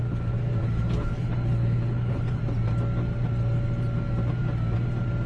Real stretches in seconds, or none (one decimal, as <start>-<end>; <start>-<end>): 0.0-0.6; 2.4-5.3